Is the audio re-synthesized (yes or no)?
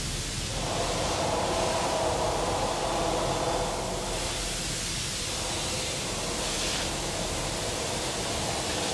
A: no